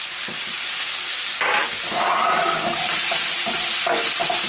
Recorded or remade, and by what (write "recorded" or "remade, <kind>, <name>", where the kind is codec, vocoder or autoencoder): recorded